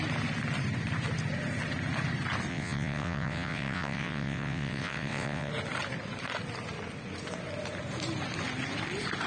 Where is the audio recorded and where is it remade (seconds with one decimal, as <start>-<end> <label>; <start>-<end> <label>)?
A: 0.0-2.5 recorded; 2.5-5.5 remade; 5.5-9.3 recorded